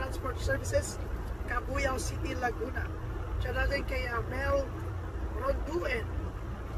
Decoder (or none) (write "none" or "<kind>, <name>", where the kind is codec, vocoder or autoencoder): none